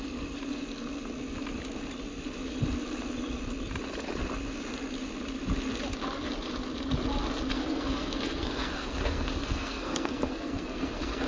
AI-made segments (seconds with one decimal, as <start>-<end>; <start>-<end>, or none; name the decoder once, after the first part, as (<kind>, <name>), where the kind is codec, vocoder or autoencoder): 7.5-11.3 (codec, SNAC)